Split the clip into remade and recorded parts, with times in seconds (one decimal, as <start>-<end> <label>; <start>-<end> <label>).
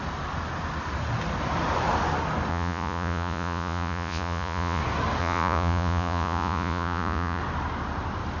0.0-2.5 recorded; 2.5-4.8 remade; 4.8-5.2 recorded; 5.2-7.4 remade; 7.4-8.4 recorded